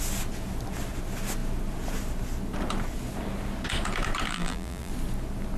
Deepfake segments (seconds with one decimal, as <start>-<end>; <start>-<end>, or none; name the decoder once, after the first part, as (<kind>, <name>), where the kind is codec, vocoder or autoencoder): 4.3-4.9 (vocoder, BigVGAN v2)

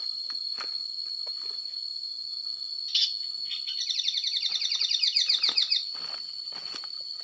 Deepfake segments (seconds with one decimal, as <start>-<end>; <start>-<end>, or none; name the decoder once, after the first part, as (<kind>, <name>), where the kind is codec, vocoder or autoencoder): none